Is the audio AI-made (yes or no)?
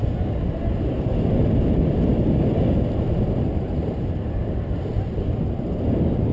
no